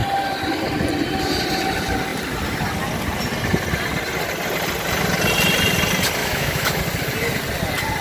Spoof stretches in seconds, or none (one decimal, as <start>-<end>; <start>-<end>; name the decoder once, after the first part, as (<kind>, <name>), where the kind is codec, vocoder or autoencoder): 6.2-6.8 (autoencoder, DAC-VAE)